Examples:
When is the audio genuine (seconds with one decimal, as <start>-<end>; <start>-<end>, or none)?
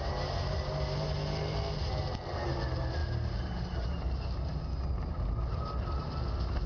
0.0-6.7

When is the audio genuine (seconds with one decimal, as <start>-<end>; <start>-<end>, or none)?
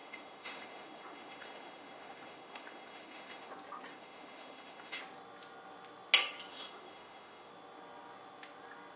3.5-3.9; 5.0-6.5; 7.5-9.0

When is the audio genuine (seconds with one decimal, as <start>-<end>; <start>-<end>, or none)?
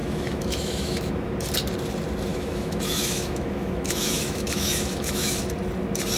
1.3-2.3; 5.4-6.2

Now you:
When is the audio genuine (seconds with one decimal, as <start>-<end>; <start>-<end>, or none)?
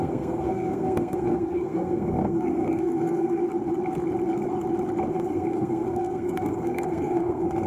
3.4-5.1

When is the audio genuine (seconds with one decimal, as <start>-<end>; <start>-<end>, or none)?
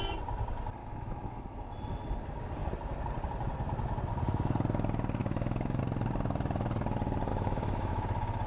0.0-0.8; 1.4-5.2; 5.8-7.3; 7.9-8.5